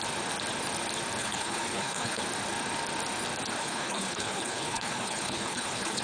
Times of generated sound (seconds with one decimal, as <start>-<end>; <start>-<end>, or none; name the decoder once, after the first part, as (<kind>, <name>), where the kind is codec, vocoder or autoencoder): 1.2-2.2 (codec, HILCodec); 3.6-6.0